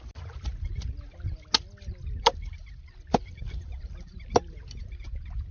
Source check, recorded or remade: recorded